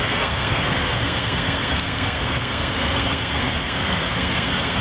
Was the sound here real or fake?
fake